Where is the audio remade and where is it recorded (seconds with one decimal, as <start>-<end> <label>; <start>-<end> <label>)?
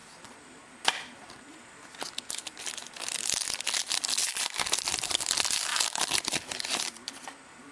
0.0-7.7 recorded